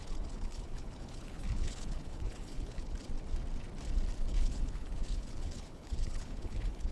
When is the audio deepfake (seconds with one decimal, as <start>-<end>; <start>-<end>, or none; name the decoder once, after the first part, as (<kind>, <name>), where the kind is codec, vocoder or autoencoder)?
0.0-2.9 (codec, HILCodec); 4.3-6.9